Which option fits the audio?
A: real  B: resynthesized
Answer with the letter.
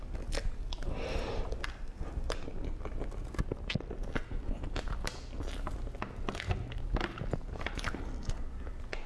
A